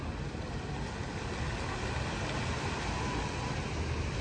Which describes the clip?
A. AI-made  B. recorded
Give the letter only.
B